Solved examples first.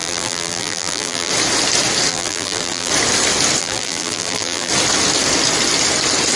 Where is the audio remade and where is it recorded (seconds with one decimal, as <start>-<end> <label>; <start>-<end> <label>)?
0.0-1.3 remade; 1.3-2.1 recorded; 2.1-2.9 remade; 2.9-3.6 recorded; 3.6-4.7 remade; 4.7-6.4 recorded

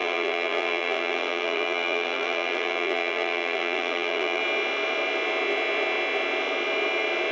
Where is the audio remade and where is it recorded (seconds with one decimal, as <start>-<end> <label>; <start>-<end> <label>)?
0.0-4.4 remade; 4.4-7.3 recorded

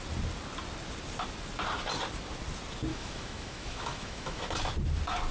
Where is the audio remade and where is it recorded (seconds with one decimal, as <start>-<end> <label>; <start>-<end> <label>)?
0.0-2.9 recorded; 2.9-4.4 remade; 4.4-5.3 recorded

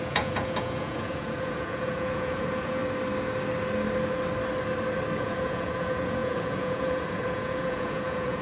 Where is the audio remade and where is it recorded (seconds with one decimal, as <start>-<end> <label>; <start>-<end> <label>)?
0.0-2.8 remade; 2.8-5.2 recorded; 5.2-8.4 remade

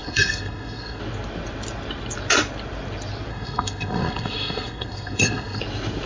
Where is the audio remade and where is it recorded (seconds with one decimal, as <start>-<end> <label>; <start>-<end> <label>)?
0.0-1.0 remade; 1.0-3.3 recorded; 3.3-5.6 remade; 5.6-6.1 recorded